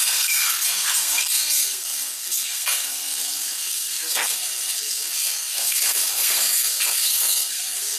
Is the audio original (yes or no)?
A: no